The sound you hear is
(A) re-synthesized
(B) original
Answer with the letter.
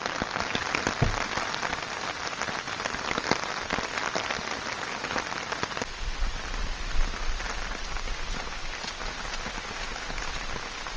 B